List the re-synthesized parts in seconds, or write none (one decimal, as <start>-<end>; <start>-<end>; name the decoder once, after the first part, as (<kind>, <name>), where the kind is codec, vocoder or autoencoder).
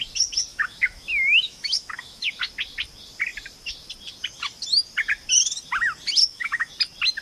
0.5-2.3 (autoencoder, DAC-VAE); 6.2-6.7